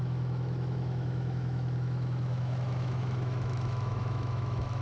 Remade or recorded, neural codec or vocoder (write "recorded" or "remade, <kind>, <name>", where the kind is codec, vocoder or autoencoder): remade, autoencoder, DAC-VAE